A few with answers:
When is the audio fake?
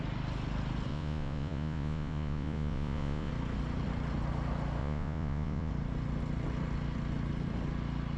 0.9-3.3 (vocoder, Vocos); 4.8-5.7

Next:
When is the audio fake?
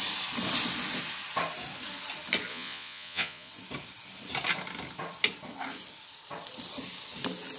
2.5-3.5 (vocoder, Vocos)